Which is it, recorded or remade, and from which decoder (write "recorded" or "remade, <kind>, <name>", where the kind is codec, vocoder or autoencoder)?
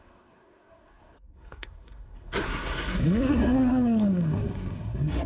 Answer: remade, codec, SNAC